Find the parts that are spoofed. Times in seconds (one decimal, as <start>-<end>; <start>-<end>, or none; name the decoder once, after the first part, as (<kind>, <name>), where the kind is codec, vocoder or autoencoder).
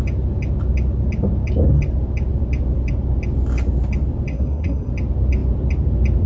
4.3-4.9 (codec, SNAC)